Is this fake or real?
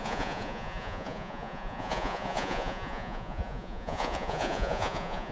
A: fake